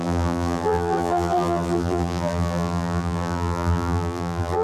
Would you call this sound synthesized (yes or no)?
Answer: yes